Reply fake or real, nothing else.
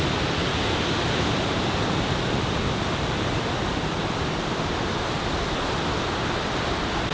real